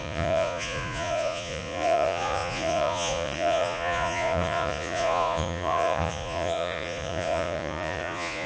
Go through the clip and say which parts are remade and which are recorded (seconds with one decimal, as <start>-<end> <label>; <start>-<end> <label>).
0.0-8.5 remade